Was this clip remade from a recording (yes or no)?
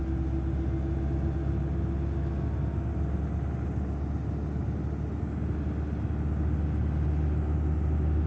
no